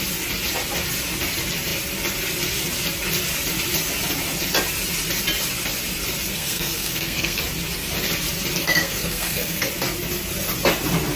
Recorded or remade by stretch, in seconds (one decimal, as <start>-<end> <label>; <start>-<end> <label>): 0.0-6.3 recorded; 6.3-7.4 remade; 7.4-8.6 recorded; 8.6-9.7 remade; 9.7-11.2 recorded